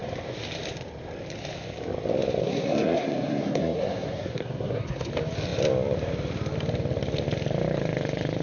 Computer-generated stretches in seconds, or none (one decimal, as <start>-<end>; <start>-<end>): 2.4-5.1